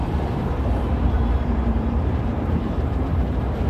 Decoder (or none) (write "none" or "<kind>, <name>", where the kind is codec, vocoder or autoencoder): vocoder, BigVGAN v2